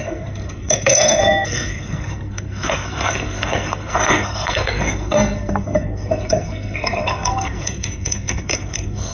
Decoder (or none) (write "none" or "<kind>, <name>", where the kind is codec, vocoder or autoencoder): codec, SNAC